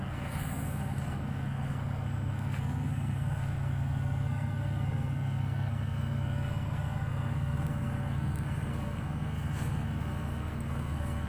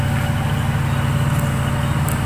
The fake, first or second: first